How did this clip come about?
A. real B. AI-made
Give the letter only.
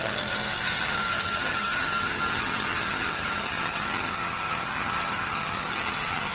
B